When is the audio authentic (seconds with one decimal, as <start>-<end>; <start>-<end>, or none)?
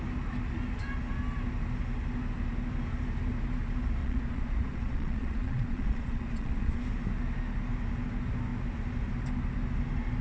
0.0-4.0; 6.8-10.2